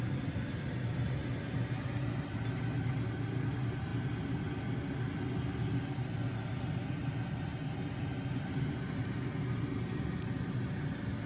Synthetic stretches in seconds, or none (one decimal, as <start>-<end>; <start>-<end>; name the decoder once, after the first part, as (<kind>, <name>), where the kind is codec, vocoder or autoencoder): none